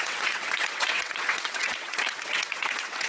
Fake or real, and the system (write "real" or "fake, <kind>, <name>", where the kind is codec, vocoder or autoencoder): fake, vocoder, WaveNeXt